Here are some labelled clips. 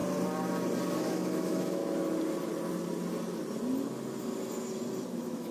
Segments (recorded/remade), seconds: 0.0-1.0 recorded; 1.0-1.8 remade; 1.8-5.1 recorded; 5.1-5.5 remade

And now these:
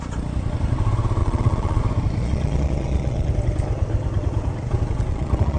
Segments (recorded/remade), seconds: 0.0-1.2 recorded; 1.2-1.8 remade; 1.8-2.2 recorded; 2.2-3.3 remade; 3.3-5.1 recorded; 5.1-5.6 remade

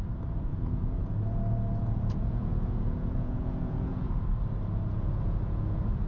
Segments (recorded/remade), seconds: 0.0-0.5 recorded; 0.5-4.2 remade; 4.2-4.9 recorded; 4.9-6.1 remade

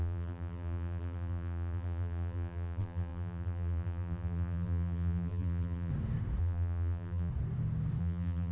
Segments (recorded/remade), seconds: 0.0-5.9 remade; 5.9-6.4 recorded; 6.4-7.3 remade; 7.3-8.0 recorded; 8.0-8.5 remade

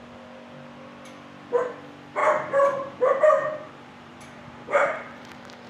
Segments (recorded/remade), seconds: 0.0-2.2 recorded; 2.2-5.7 remade

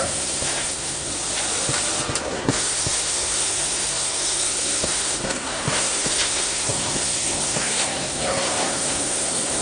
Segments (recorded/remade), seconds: 0.0-1.1 remade; 1.1-2.2 recorded; 2.2-9.6 remade

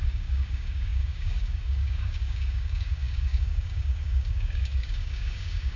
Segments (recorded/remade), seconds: 0.0-5.8 remade